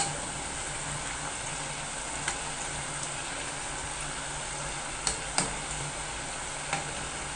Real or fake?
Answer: real